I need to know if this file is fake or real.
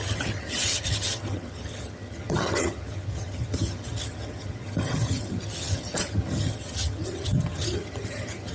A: fake